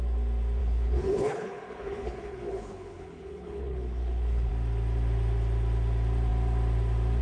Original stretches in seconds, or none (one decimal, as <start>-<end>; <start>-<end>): 0.0-0.6; 4.5-7.2